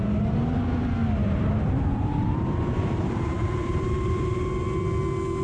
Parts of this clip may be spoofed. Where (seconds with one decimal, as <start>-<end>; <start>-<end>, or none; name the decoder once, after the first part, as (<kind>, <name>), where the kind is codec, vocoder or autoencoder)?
1.2-4.4 (vocoder, BigVGAN v2)